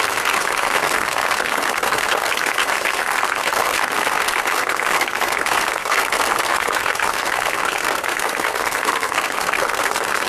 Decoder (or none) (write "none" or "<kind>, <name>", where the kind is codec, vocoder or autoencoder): codec, SNAC